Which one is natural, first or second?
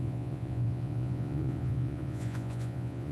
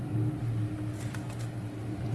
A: second